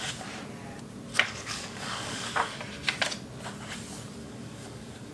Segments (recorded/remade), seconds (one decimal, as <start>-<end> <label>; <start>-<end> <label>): 0.0-1.1 recorded; 1.1-2.3 remade; 2.3-4.2 recorded; 4.2-5.1 remade